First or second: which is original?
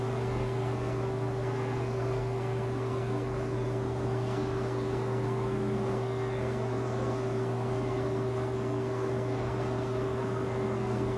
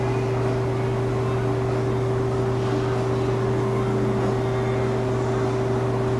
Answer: second